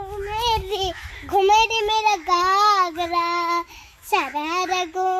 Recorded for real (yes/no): no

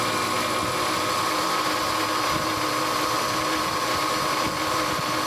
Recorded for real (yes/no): yes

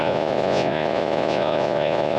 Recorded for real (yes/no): no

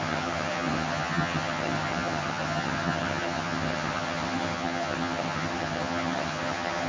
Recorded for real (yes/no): no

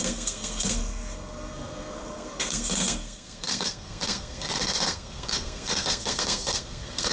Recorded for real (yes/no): no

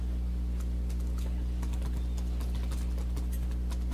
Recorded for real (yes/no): yes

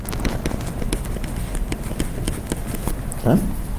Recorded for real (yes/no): yes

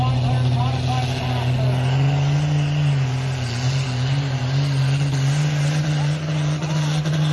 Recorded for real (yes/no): yes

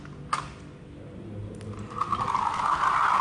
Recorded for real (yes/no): yes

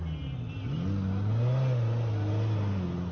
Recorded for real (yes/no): yes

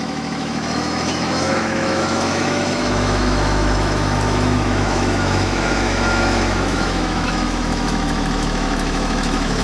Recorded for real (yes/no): no